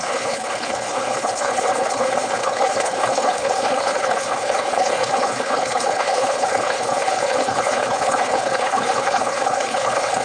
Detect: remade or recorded remade